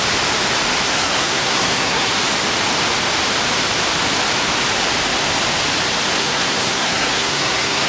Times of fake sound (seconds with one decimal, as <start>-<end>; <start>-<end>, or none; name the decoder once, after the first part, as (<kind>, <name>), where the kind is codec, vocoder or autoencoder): 0.9-2.1 (codec, SNAC); 6.2-7.9